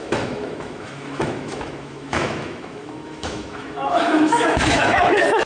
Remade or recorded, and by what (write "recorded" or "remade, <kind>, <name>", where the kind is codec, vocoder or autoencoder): remade, autoencoder, DAC-VAE